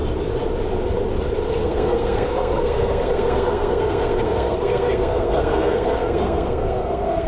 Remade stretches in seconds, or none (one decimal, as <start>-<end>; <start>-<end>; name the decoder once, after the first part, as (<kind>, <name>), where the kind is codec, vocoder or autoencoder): 1.6-7.3 (codec, SNAC)